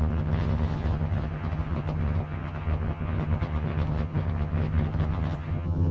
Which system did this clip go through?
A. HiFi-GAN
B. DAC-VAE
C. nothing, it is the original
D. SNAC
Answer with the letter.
A